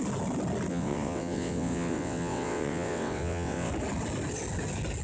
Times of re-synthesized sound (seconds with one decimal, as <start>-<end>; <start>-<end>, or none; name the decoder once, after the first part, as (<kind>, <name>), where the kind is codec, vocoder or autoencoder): 0.7-3.7 (vocoder, WaveNeXt)